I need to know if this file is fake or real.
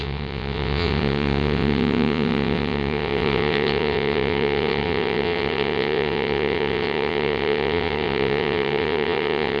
fake